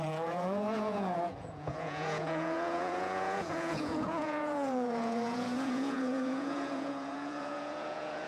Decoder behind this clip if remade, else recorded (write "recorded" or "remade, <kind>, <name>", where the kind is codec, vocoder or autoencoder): remade, vocoder, Vocos